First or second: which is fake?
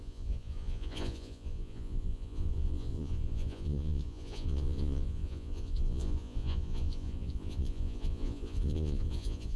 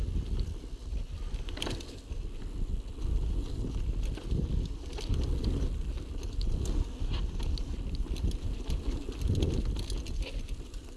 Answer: first